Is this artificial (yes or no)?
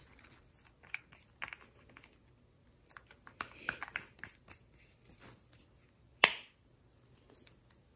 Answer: no